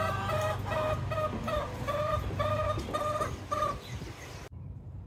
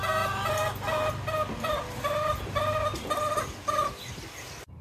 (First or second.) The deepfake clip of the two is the first